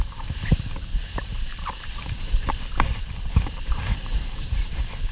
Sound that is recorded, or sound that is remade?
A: remade